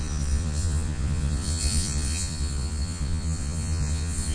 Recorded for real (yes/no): no